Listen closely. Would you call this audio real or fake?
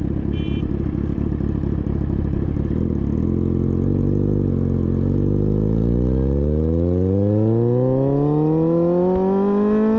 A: real